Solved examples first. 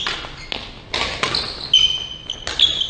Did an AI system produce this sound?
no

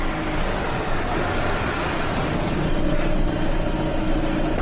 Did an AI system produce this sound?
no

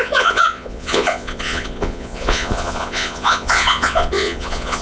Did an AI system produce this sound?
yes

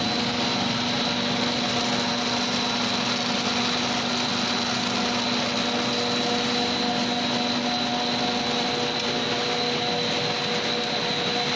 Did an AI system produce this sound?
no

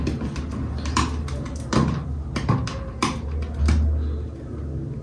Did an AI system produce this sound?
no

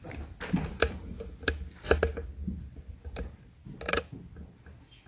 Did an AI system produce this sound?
no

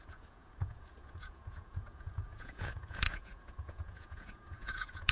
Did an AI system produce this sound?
yes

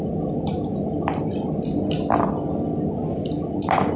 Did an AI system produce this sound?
no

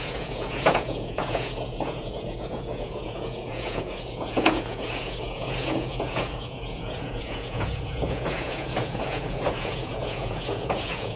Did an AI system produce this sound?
yes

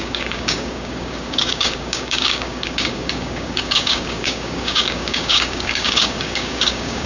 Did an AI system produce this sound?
yes